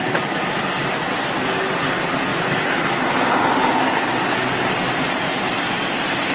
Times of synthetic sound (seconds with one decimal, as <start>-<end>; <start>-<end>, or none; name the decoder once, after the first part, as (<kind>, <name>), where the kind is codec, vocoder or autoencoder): none